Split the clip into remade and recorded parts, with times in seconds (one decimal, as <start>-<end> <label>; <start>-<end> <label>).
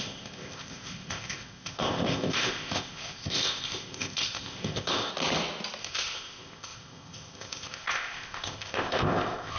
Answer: 0.0-5.1 remade; 5.1-5.8 recorded; 5.8-9.6 remade